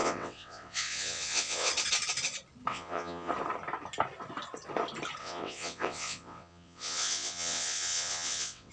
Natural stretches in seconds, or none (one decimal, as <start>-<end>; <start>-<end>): 1.7-2.7; 3.3-5.2